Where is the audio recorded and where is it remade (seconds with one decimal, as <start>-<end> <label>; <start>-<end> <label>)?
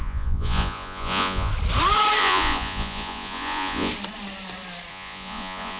0.0-1.5 remade; 1.5-2.2 recorded; 2.2-3.9 remade; 3.9-4.9 recorded; 4.9-5.8 remade